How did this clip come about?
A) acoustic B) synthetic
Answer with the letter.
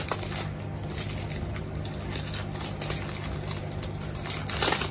A